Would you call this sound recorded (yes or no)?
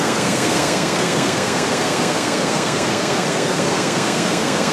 no